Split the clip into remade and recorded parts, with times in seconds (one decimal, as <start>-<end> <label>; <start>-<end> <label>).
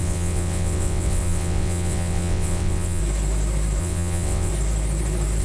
0.0-3.0 remade; 3.0-3.8 recorded; 3.8-4.5 remade; 4.5-5.4 recorded